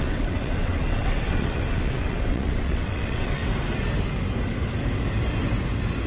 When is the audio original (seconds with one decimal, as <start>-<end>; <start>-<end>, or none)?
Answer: 3.4-6.1